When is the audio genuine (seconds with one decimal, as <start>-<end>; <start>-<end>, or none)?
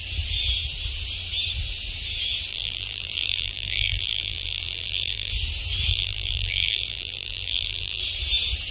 0.0-2.5; 5.3-5.9; 8.0-8.7